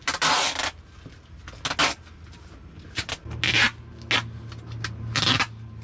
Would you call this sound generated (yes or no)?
no